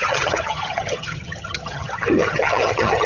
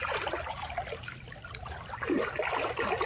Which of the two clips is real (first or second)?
second